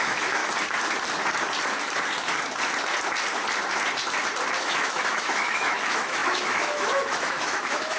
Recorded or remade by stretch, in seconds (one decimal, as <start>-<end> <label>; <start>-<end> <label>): 0.0-0.4 remade; 0.4-4.6 recorded; 4.6-8.0 remade